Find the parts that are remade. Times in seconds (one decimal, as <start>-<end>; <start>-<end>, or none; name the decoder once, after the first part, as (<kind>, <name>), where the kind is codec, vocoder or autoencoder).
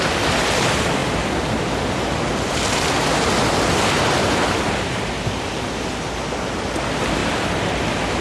none